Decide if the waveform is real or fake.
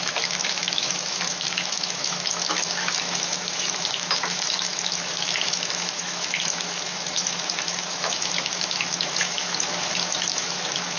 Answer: fake